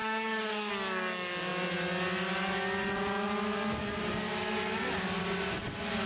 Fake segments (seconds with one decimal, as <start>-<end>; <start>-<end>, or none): 0.0-0.7